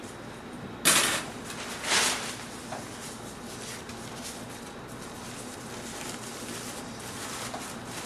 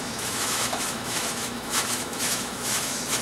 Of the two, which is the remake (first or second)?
second